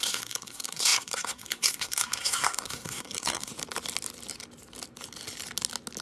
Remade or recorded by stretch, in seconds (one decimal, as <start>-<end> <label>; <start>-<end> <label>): 0.0-3.5 remade; 3.5-6.0 recorded